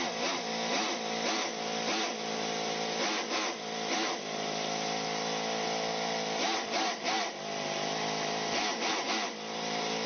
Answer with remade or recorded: recorded